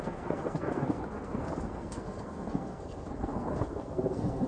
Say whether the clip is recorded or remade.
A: remade